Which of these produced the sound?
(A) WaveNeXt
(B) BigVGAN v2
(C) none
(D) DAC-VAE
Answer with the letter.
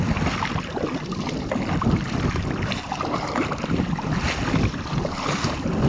C